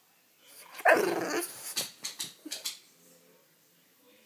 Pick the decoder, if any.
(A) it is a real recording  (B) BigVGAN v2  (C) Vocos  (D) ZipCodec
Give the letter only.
A